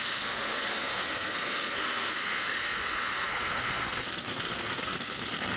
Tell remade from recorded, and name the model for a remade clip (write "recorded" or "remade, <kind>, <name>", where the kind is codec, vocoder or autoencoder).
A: remade, codec, SNAC